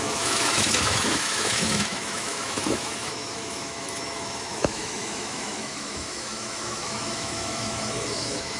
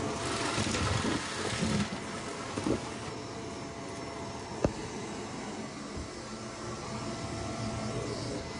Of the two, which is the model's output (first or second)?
first